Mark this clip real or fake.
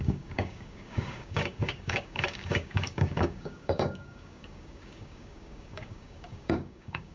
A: fake